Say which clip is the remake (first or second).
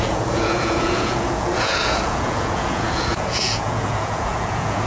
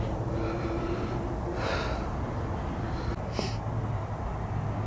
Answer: first